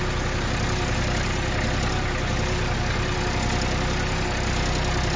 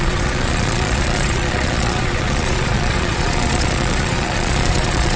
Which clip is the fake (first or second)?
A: second